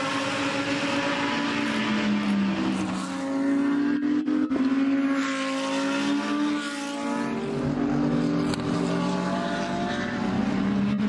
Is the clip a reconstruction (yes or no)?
no